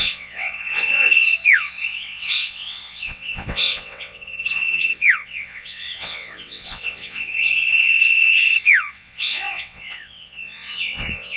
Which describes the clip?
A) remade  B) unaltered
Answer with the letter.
A